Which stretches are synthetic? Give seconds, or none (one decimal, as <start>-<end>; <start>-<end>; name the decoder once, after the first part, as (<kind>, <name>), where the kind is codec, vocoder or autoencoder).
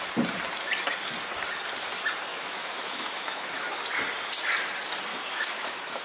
2.3-3.8 (autoencoder, DAC-VAE); 5.1-6.0